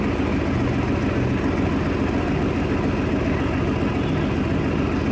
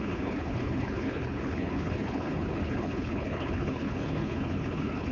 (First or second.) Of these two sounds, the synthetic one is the second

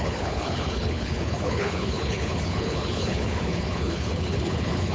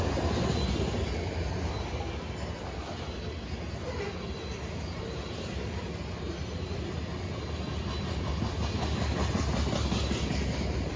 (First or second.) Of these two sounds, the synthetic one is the first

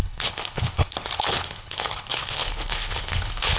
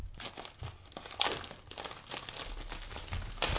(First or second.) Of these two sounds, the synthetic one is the first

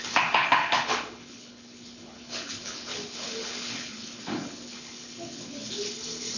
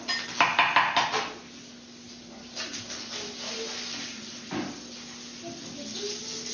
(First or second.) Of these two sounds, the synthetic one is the first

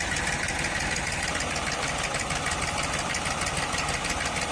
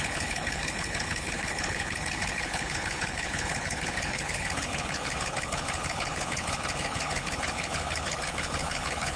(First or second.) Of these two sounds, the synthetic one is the second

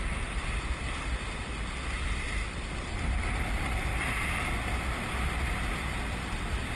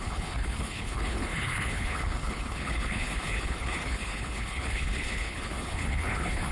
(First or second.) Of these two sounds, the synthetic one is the second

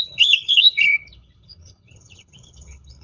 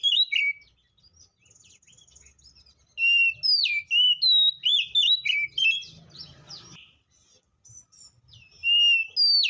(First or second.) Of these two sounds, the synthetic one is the first